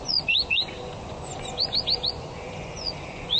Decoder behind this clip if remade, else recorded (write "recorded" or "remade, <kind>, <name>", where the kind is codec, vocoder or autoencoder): remade, vocoder, Vocos